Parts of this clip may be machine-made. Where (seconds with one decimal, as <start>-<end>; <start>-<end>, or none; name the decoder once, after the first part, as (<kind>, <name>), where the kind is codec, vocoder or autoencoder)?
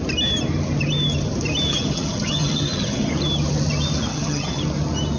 1.7-3.1 (vocoder, HiFi-GAN); 4.1-4.6